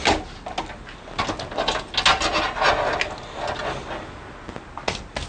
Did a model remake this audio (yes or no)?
no